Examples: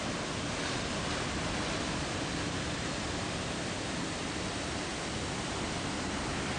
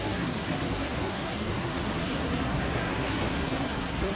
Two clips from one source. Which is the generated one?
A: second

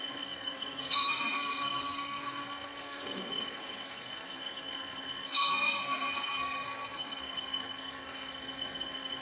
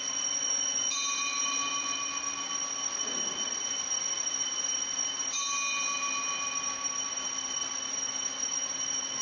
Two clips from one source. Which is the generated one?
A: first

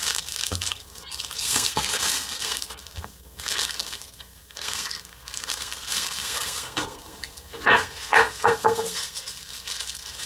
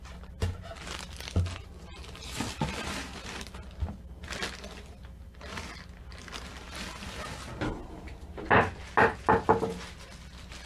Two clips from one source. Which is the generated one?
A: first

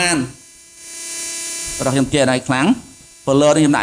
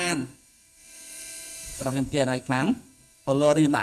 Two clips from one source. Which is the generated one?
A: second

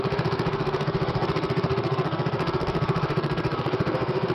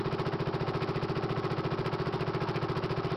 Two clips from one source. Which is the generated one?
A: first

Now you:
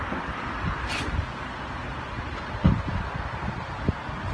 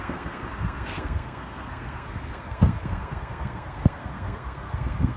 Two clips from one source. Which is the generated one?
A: second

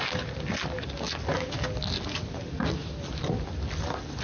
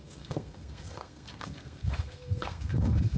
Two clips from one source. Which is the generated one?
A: second